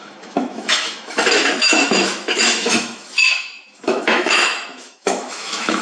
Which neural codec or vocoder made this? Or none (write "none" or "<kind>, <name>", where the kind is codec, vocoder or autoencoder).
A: autoencoder, DAC-VAE